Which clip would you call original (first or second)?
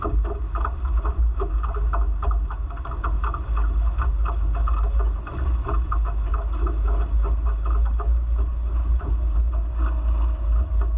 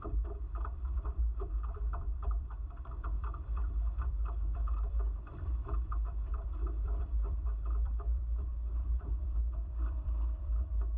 first